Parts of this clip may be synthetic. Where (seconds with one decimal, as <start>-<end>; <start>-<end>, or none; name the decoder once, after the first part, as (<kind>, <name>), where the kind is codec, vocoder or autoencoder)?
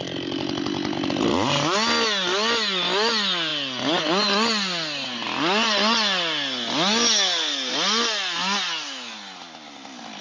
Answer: none